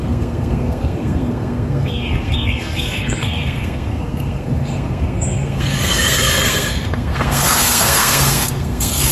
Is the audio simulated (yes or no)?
yes